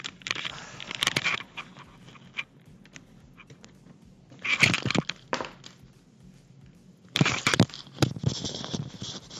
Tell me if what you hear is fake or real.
fake